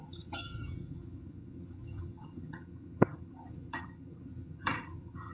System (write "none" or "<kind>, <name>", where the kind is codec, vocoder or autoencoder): vocoder, HiFi-GAN